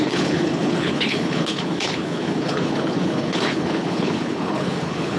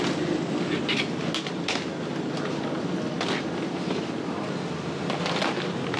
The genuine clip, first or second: second